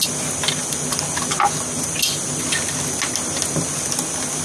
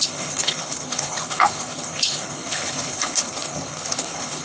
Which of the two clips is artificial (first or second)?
second